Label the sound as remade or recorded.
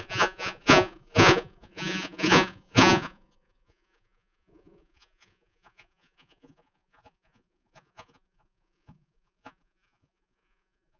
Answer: remade